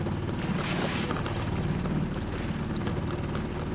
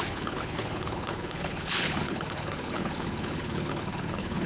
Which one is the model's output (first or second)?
second